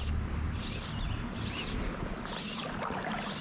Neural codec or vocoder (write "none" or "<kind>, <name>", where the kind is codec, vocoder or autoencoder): none